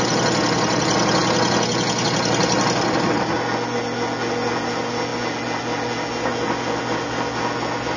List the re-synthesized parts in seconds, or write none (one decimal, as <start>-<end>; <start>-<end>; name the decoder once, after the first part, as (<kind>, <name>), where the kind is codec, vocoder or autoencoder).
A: none